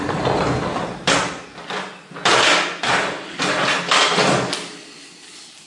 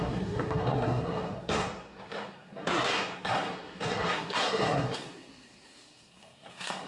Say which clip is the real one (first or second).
first